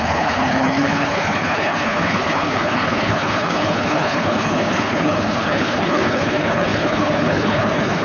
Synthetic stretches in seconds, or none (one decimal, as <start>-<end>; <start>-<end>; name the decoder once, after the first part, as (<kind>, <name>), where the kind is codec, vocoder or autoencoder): 0.0-8.0 (codec, HILCodec)